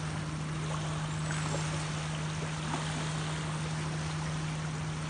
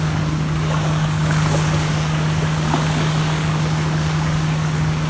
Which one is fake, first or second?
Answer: second